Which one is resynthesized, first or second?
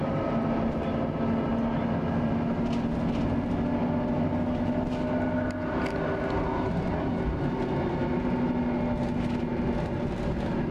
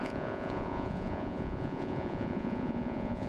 second